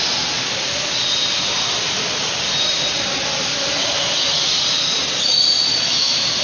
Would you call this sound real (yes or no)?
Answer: yes